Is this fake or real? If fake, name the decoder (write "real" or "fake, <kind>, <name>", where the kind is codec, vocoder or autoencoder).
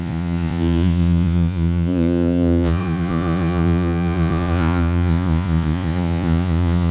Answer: fake, vocoder, Vocos